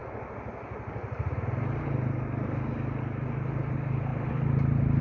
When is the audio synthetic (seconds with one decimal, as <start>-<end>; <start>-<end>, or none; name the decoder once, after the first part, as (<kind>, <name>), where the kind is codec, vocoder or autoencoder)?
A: 4.1-5.0 (vocoder, BigVGAN v2)